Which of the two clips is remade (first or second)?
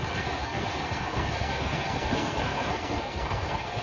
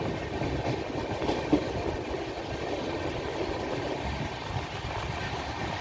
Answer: first